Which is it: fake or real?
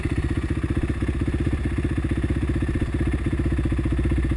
real